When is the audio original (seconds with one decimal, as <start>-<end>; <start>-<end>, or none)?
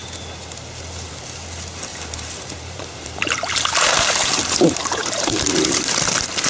0.0-1.9; 5.8-6.5